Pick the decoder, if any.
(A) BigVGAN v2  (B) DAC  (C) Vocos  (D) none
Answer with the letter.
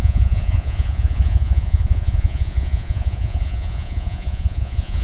C